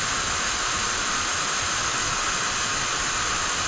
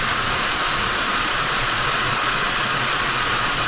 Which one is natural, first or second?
first